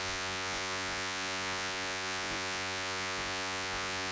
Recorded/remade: remade